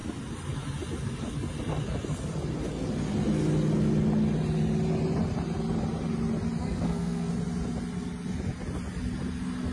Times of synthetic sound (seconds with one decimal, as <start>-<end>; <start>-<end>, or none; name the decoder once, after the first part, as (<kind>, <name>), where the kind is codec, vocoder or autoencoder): 6.6-7.3 (codec, SNAC)